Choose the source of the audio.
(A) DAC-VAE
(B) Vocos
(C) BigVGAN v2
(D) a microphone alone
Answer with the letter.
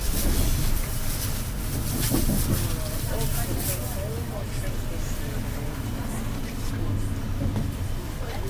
D